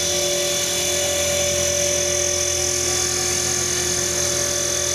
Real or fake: real